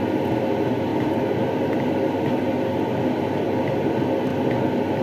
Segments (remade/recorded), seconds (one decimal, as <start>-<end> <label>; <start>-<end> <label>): 0.0-5.0 recorded